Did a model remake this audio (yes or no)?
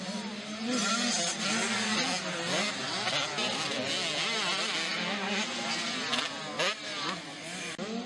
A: no